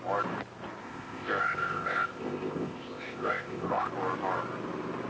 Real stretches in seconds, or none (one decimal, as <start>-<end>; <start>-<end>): 0.0-0.8; 3.9-5.1